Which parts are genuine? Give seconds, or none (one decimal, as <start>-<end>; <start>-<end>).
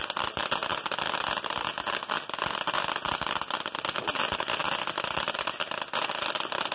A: 0.0-4.6; 5.2-6.7